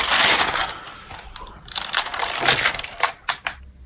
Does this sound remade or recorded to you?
recorded